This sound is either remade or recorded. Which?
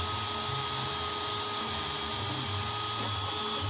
recorded